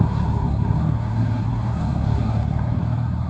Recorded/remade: remade